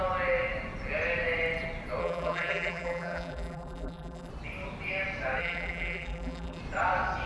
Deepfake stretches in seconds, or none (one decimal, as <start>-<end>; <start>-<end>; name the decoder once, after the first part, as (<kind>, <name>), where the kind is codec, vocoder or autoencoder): 2.0-4.3 (vocoder, BigVGAN v2); 5.4-6.6